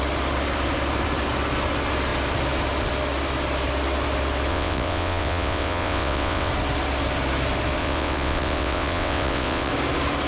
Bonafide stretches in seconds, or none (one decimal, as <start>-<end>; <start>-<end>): 0.0-4.5; 6.5-7.8; 9.7-10.3